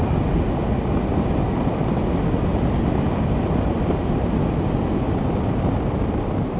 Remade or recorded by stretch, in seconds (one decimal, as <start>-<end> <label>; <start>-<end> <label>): 0.0-6.6 recorded